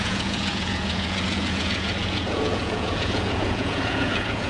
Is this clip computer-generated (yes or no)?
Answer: yes